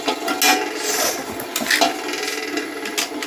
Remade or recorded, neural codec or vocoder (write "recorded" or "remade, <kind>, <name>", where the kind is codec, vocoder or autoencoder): recorded